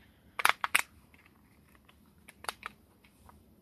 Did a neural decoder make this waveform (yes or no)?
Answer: yes